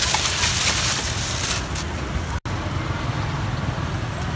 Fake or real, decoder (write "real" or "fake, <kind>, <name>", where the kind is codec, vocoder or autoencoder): real